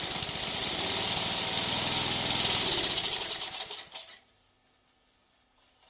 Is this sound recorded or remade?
recorded